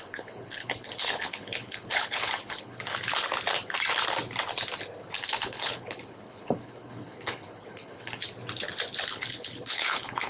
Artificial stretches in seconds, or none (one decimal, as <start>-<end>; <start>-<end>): 0.0-2.9; 5.3-8.2; 9.1-10.3